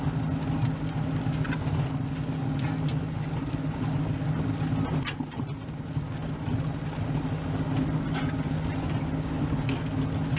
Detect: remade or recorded recorded